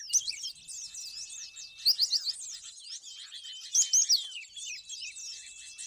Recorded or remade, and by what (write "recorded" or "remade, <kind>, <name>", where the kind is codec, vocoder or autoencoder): recorded